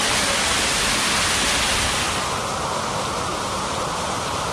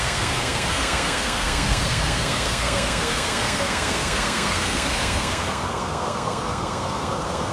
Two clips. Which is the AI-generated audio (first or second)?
second